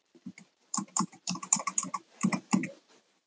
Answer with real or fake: fake